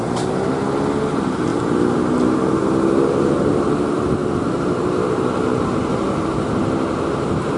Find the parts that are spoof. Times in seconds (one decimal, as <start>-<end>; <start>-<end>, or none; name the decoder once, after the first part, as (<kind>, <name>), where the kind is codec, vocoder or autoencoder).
none

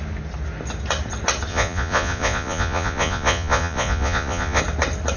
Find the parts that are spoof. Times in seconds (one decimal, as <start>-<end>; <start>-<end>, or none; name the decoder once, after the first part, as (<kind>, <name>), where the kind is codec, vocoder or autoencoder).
1.5-4.6 (vocoder, Vocos)

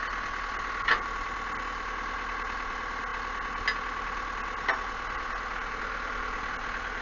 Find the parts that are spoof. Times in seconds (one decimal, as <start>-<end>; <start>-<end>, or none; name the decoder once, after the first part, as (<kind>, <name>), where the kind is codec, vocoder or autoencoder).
none

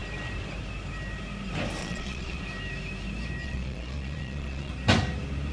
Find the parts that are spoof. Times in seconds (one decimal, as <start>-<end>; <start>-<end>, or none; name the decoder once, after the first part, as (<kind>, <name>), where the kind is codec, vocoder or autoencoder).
1.8-2.4 (vocoder, Vocos); 3.4-4.7

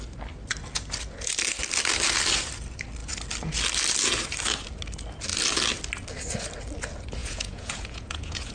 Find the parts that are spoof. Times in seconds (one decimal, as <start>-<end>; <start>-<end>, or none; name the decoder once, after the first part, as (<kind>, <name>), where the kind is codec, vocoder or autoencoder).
7.2-8.5 (vocoder, Vocos)

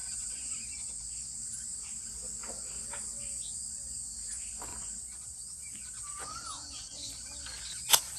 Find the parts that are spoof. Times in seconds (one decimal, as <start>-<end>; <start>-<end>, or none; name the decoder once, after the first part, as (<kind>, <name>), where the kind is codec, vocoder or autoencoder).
0.0-0.7 (vocoder, Vocos); 4.7-7.1

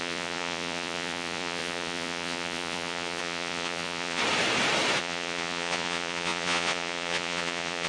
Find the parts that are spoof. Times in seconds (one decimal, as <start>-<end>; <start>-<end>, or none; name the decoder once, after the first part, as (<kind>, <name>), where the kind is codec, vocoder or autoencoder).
0.0-4.2 (vocoder, Vocos); 5.0-7.9

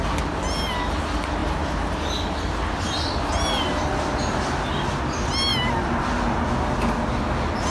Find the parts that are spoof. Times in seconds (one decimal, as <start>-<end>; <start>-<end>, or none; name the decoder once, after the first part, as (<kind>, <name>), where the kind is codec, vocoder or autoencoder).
none